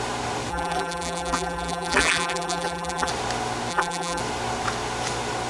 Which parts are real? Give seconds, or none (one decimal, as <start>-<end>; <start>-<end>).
0.0-0.5; 3.1-3.7; 4.2-5.5